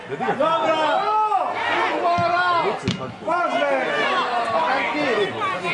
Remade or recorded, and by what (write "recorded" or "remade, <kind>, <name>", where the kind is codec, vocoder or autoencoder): recorded